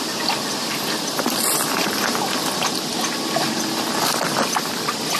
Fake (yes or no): no